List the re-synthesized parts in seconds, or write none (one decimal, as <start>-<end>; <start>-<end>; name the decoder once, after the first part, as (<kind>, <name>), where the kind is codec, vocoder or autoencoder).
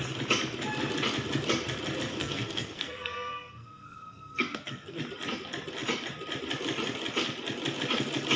2.1-5.0 (codec, SNAC)